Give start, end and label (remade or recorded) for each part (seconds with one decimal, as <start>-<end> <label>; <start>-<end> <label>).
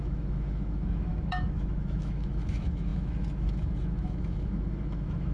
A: 0.0-5.3 remade